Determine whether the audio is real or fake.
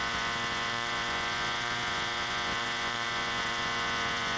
fake